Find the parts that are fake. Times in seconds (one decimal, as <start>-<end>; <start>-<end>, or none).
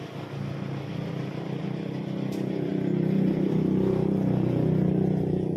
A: none